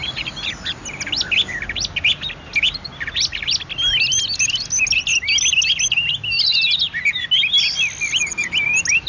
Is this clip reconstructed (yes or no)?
no